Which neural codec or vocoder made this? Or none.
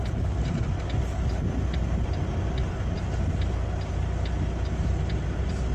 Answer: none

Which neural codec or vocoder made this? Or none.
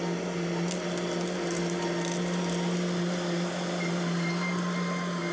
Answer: none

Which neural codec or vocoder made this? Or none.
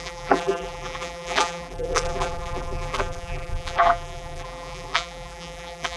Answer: vocoder, BigVGAN v2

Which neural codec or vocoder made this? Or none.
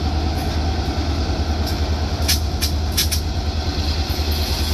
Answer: none